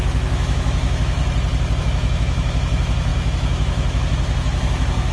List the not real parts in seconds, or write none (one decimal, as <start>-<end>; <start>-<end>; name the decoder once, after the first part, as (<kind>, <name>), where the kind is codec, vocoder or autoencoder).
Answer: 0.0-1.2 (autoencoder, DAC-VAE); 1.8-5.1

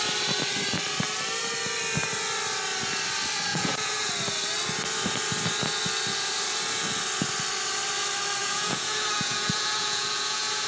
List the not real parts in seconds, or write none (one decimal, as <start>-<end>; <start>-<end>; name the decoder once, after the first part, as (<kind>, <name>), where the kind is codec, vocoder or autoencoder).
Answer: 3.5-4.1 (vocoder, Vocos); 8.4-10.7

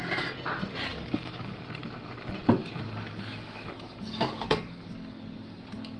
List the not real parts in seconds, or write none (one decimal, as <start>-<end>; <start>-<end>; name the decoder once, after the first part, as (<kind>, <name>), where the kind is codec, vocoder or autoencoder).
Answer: 0.9-1.6 (codec, DAC); 2.6-6.0

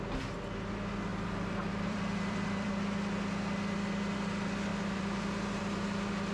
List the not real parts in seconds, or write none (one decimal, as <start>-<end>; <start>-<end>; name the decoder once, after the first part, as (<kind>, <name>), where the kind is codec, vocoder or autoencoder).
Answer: 1.1-2.7 (vocoder, BigVGAN v2); 4.7-5.6

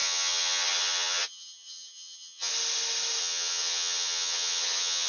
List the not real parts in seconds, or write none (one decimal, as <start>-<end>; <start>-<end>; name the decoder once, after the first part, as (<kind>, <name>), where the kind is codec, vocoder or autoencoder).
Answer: 0.0-2.5 (vocoder, HiFi-GAN); 3.2-5.1

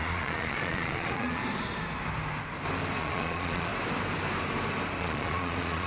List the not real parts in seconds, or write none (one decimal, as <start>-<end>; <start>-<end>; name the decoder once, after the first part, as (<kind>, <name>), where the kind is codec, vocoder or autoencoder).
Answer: 0.0-1.4 (vocoder, Vocos); 3.0-3.7; 5.0-5.9